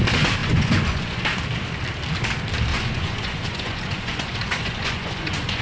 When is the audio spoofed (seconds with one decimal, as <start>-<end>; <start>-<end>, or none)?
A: 0.4-1.2; 2.7-5.6